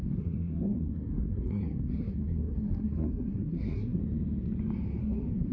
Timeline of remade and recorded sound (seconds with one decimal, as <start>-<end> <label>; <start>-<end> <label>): 0.0-4.0 remade; 4.0-5.0 recorded; 5.0-5.5 remade